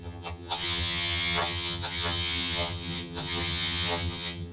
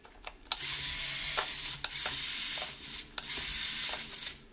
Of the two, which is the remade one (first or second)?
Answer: first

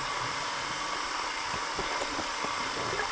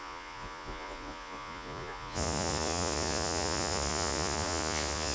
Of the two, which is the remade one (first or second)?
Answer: second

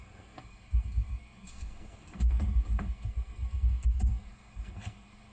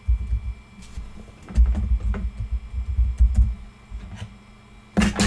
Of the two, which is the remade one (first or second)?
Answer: first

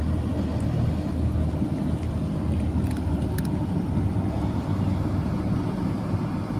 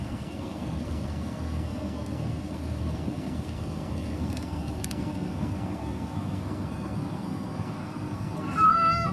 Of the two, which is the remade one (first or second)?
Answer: second